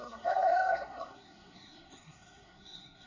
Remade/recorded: remade